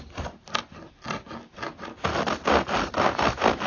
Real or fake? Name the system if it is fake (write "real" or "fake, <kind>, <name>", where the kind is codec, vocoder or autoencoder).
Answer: real